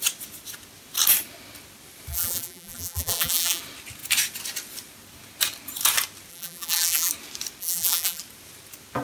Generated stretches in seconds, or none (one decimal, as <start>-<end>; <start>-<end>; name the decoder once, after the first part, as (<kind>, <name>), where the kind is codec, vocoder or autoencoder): 2.1-3.6 (vocoder, BigVGAN v2); 6.3-7.1; 7.6-8.2